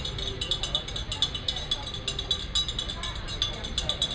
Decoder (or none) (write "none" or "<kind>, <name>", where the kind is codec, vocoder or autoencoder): none